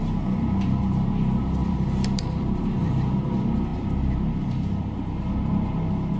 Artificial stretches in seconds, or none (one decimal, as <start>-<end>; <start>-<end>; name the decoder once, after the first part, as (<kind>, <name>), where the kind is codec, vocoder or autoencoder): 1.6-2.9 (vocoder, BigVGAN v2); 3.7-5.4